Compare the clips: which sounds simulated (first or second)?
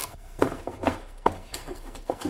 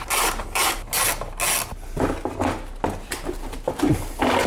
first